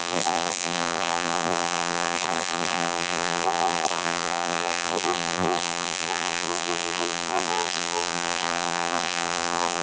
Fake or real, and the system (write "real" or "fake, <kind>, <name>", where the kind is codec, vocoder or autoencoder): fake, vocoder, BigVGAN v2